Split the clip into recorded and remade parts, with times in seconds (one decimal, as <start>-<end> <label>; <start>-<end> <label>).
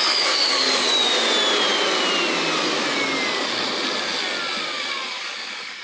0.0-1.1 remade; 1.1-4.6 recorded; 4.6-5.8 remade